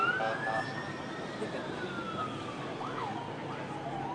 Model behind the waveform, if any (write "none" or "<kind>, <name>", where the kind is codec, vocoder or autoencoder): none